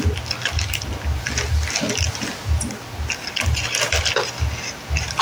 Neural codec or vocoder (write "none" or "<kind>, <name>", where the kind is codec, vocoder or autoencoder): none